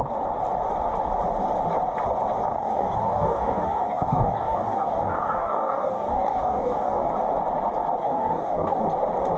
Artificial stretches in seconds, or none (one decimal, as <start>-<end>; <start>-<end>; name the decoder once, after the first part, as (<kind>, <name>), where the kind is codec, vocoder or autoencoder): 2.5-7.1 (codec, DAC); 8.0-8.8